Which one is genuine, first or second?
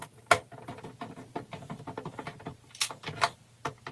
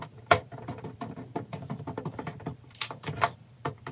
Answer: first